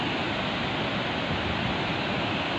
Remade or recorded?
recorded